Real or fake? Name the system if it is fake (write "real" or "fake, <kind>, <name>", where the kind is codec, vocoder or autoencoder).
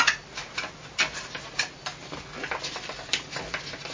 real